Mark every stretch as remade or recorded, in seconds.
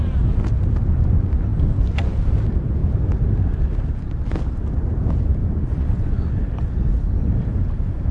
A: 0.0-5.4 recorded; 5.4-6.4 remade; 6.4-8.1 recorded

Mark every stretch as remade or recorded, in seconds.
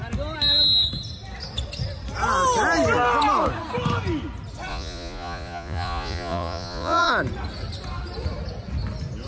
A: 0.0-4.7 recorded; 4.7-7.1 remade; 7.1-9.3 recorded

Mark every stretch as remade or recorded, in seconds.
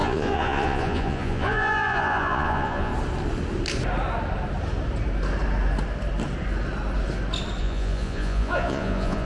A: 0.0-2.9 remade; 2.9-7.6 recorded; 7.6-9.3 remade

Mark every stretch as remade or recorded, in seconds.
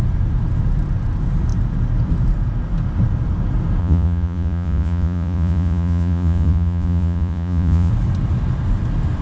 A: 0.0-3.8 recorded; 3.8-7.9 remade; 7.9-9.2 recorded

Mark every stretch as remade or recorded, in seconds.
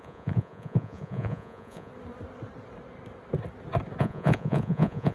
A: 0.0-1.9 remade; 1.9-4.0 recorded; 4.0-5.1 remade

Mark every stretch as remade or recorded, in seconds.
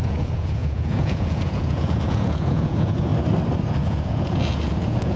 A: 0.0-3.1 remade; 3.1-3.7 recorded; 3.7-5.2 remade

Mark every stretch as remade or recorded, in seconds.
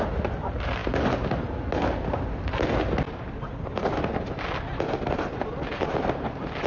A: 0.0-6.7 recorded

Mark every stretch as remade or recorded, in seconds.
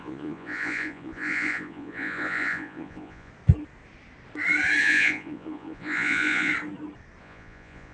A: 0.0-3.3 remade; 3.3-4.8 recorded; 4.8-6.5 remade; 6.5-7.2 recorded; 7.2-7.9 remade